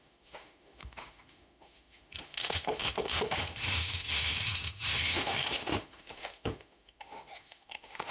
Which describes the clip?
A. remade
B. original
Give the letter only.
A